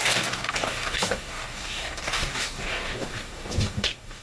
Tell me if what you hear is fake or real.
fake